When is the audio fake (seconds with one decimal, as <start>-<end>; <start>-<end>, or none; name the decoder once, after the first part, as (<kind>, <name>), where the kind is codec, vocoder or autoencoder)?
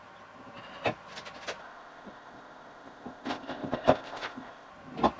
1.6-4.7 (codec, ZipCodec)